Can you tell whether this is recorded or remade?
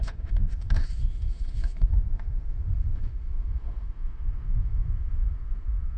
remade